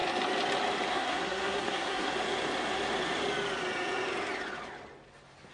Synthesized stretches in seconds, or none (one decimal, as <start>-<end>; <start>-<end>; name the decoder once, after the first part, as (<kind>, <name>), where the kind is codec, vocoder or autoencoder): 0.9-2.1 (codec, SNAC)